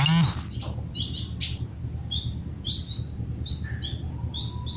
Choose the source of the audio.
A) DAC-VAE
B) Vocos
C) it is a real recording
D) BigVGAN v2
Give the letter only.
C